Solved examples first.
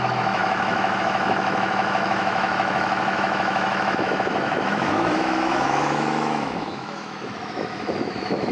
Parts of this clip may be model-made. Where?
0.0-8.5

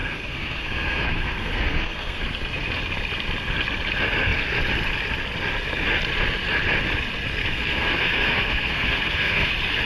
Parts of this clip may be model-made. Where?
0.0-2.2; 7.4-9.5

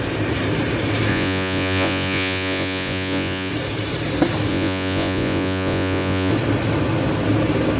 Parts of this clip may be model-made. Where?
1.1-3.5; 4.5-6.3